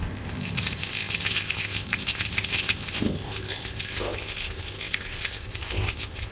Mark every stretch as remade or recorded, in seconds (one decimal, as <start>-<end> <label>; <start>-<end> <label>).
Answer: 0.0-6.3 remade